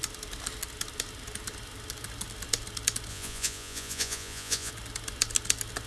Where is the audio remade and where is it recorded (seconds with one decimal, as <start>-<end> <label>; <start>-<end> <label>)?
0.0-3.1 recorded; 3.1-4.7 remade; 4.7-5.9 recorded